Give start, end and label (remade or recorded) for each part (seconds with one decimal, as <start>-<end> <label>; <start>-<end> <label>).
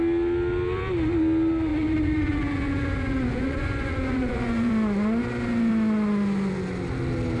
0.0-1.7 recorded; 1.7-4.7 remade; 4.7-7.4 recorded